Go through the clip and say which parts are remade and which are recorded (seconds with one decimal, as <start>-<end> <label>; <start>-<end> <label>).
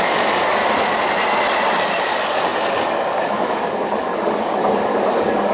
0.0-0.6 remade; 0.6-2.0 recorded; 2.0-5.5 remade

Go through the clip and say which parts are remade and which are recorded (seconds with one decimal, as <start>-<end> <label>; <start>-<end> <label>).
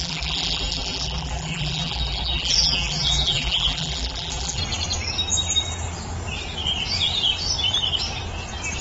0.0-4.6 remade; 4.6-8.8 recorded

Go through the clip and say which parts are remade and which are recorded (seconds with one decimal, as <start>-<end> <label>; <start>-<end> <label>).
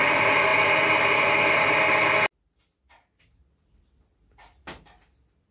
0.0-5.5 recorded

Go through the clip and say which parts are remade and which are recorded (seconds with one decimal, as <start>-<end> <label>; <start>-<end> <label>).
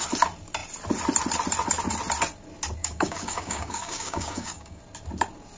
0.0-2.8 recorded; 2.8-4.8 remade; 4.8-5.6 recorded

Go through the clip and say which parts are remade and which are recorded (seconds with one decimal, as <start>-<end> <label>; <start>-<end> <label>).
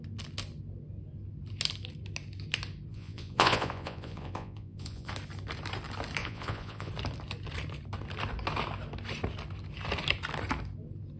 0.0-2.9 recorded; 2.9-5.1 remade; 5.1-6.2 recorded; 6.2-6.9 remade; 6.9-11.2 recorded